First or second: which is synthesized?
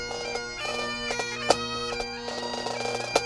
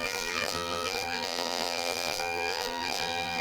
second